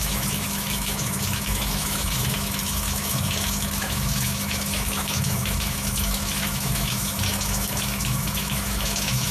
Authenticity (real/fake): fake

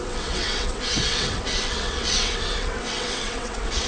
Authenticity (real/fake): fake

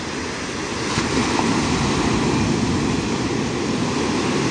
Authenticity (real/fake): real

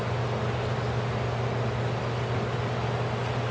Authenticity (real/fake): real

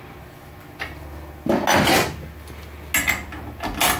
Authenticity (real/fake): real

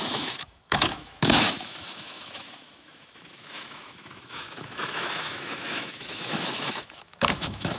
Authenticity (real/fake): fake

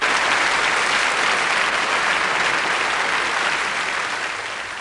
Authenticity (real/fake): real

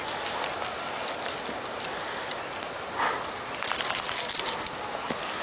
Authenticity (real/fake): real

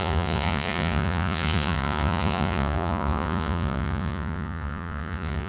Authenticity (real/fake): fake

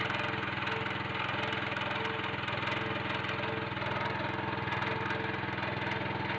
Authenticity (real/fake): real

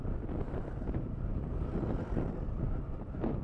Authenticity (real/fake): real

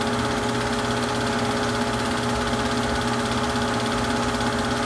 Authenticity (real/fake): real